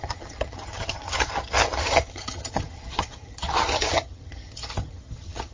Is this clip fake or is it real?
fake